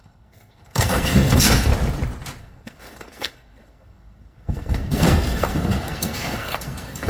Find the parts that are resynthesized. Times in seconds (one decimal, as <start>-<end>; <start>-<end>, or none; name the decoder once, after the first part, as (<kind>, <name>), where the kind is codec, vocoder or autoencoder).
0.0-1.7 (codec, SNAC); 2.4-7.1